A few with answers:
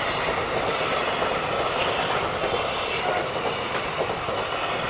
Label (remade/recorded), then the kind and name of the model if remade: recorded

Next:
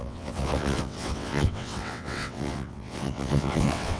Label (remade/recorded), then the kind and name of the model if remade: remade, vocoder, WaveNeXt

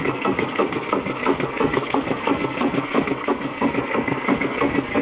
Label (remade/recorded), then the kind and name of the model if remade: remade, codec, SNAC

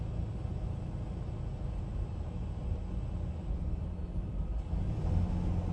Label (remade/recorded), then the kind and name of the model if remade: recorded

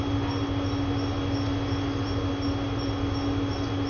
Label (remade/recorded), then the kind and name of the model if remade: recorded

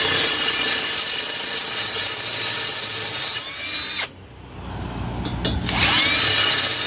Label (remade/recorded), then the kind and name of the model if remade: recorded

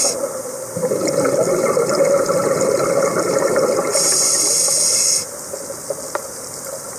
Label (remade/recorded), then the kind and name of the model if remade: remade, vocoder, BigVGAN v2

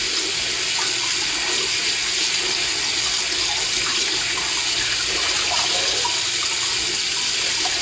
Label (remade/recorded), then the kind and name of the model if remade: recorded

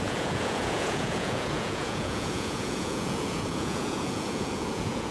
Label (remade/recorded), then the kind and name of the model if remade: remade, vocoder, Vocos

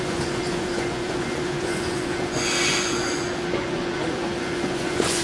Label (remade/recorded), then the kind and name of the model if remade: remade, vocoder, Vocos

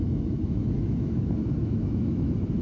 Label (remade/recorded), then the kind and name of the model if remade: remade, autoencoder, DAC-VAE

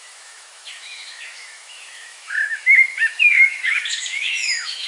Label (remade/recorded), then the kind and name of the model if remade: remade, autoencoder, DAC-VAE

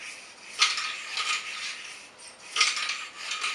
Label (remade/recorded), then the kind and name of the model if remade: recorded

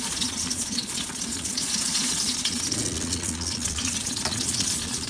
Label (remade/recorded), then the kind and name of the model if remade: remade, vocoder, Vocos